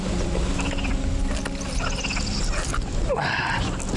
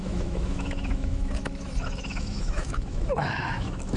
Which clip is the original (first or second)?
first